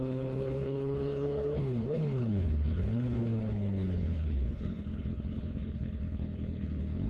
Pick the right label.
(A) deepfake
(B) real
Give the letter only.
A